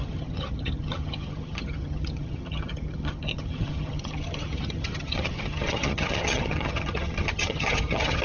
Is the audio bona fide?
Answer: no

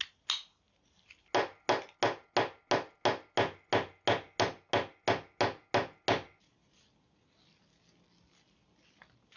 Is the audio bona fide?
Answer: yes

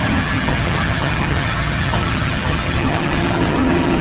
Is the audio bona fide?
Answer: no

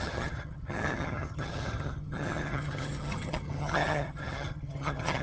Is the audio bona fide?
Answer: no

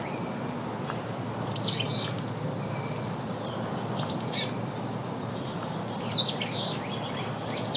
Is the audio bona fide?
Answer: yes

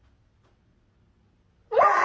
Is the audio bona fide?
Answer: yes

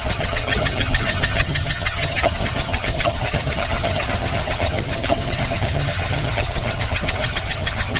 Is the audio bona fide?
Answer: no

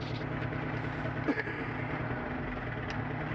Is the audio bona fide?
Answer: yes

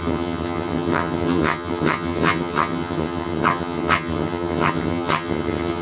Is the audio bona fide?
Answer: no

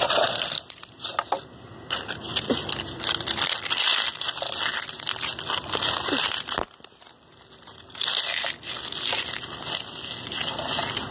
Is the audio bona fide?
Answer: yes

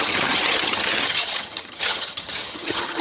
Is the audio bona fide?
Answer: no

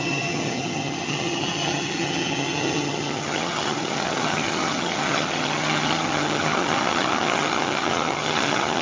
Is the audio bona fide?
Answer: no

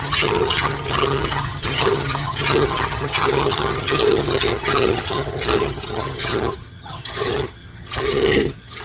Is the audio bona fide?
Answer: no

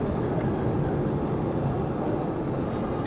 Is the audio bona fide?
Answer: yes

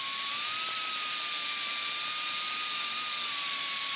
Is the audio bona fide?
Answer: yes